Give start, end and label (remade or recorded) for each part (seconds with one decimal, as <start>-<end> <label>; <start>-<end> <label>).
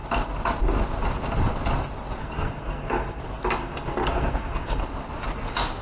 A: 0.0-2.2 recorded; 2.2-3.2 remade; 3.2-3.6 recorded; 3.6-4.8 remade; 4.8-5.8 recorded